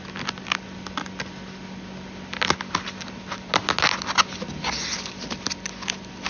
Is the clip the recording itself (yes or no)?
yes